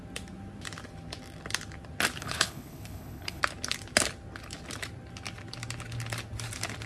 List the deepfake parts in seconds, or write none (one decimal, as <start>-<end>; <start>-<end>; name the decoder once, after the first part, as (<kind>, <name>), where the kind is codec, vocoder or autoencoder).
2.2-3.4 (codec, HILCodec)